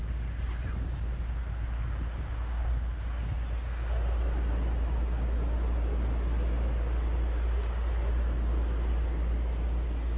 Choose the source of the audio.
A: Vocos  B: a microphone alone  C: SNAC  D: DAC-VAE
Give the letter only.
B